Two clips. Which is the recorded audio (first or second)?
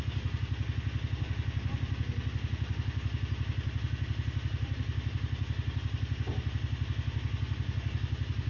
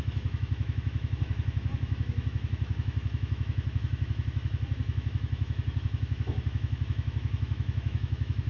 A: first